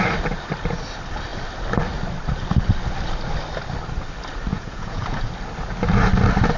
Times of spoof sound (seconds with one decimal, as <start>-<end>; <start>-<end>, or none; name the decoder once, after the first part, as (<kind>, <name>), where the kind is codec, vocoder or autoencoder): 4.5-5.3 (vocoder, Vocos)